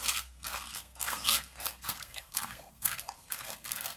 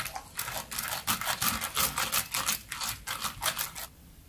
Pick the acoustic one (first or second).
second